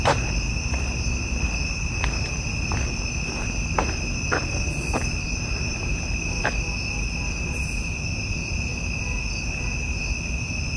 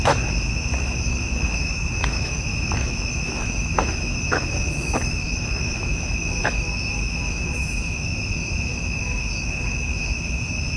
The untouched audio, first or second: first